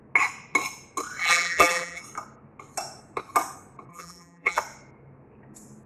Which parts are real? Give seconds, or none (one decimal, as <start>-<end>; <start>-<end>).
0.0-1.2; 2.0-3.9; 4.6-5.9